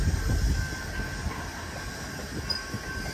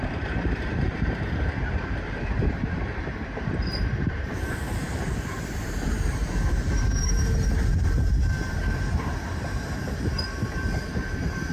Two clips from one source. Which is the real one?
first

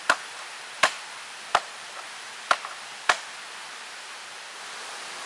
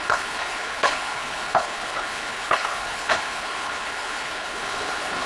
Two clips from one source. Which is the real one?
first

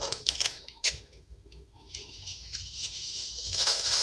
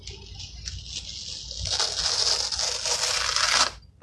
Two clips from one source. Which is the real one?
second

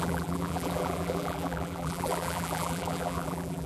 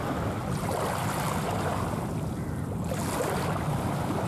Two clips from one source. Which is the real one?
second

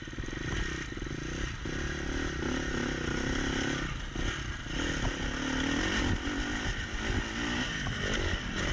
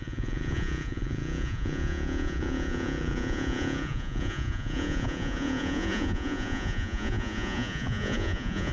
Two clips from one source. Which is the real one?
first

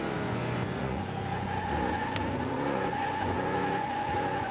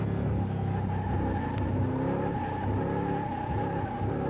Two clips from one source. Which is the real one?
second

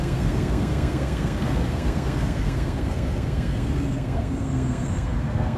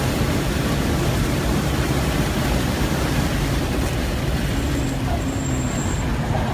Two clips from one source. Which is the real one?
second